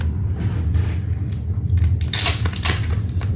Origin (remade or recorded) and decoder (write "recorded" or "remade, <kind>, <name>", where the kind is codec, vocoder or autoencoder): recorded